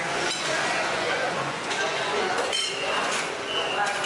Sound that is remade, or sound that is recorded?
remade